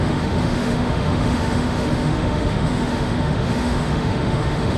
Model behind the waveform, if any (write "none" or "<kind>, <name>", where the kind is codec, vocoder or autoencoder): autoencoder, DAC-VAE